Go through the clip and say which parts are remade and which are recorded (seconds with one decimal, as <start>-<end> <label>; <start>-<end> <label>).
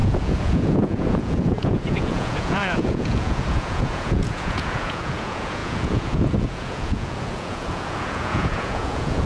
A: 0.0-9.3 remade